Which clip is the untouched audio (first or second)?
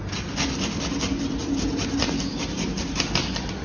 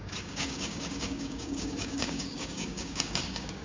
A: first